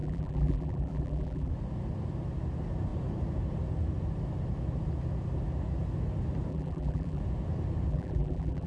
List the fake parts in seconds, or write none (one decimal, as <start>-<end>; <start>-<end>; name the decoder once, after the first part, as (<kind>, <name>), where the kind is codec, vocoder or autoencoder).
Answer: 0.0-1.5 (vocoder, BigVGAN v2); 6.5-7.2; 7.9-8.7